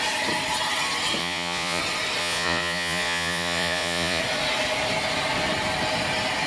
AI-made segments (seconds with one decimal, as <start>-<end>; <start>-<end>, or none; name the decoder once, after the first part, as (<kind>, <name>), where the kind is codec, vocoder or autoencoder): 1.2-1.8 (vocoder, Vocos); 2.2-4.2